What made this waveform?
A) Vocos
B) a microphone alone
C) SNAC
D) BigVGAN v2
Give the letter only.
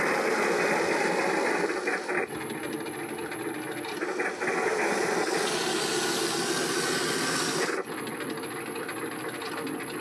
B